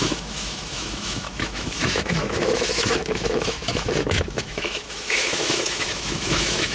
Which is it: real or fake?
fake